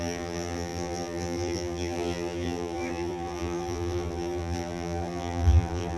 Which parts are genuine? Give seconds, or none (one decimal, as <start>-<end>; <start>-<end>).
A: none